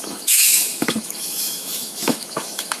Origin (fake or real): fake